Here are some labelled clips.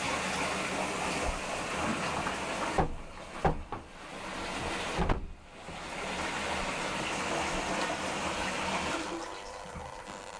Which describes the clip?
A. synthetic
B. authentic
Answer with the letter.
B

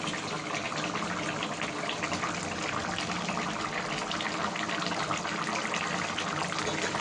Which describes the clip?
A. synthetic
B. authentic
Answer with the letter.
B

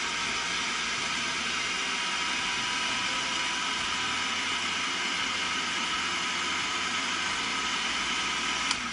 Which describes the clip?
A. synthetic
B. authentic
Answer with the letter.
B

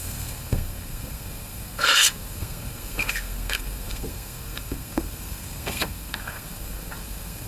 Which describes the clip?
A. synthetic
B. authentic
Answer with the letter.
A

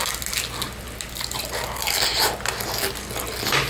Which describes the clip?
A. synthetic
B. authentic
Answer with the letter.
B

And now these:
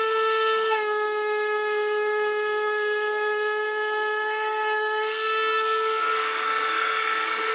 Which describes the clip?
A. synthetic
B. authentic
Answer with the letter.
A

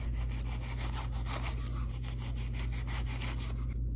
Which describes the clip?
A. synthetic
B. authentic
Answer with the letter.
B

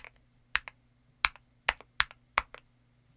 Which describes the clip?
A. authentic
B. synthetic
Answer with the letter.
A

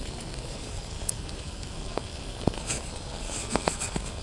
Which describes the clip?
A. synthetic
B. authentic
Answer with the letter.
A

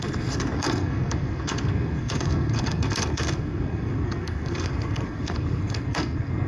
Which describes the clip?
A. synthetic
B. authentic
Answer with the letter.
A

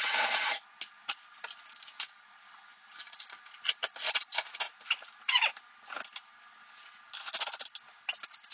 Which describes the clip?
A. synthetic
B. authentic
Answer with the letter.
B